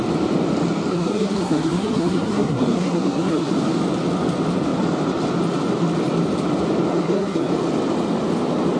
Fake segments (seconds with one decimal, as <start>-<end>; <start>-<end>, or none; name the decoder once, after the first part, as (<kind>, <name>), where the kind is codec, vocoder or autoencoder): 0.9-3.5 (codec, SNAC); 6.9-7.5